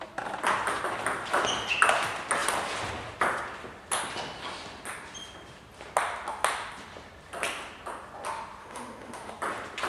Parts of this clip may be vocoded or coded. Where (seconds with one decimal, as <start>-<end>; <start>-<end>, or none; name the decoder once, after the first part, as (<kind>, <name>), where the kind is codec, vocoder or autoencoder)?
8.6-9.3 (autoencoder, DAC-VAE)